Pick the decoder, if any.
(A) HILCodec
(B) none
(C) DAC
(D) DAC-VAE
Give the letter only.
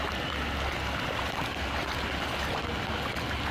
B